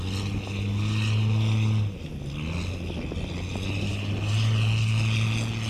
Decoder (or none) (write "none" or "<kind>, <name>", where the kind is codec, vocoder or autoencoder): none